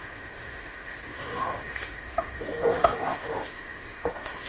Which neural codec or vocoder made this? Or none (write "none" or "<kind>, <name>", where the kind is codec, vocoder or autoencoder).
autoencoder, DAC-VAE